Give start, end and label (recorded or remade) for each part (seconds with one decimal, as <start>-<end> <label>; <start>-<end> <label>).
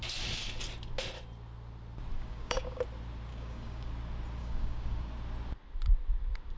0.0-2.2 recorded; 2.2-2.8 remade; 2.8-3.3 recorded; 3.3-3.9 remade; 3.9-4.4 recorded; 4.4-5.1 remade; 5.1-6.6 recorded